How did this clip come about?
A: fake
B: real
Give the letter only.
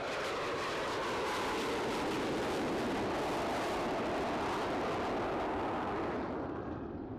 B